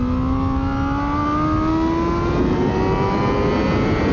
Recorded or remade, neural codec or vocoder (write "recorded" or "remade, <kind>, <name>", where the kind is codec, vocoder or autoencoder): recorded